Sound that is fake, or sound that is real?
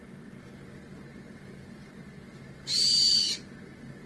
real